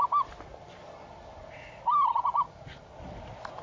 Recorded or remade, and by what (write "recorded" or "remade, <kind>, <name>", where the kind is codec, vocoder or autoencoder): recorded